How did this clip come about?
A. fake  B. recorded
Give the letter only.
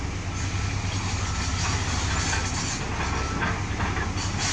B